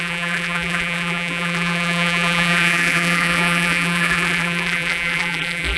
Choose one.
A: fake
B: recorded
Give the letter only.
A